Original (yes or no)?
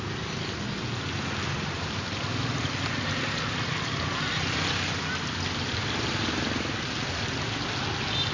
yes